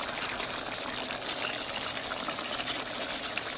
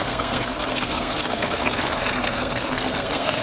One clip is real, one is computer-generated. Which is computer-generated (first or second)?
second